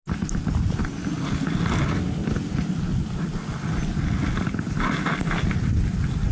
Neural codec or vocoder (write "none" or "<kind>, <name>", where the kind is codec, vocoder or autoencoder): none